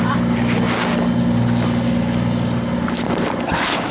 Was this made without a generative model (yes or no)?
yes